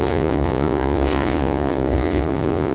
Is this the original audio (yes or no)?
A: no